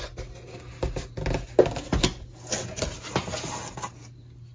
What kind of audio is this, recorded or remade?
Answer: recorded